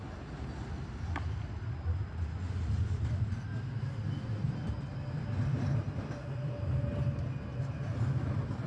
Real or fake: real